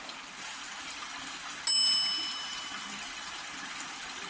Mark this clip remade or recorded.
recorded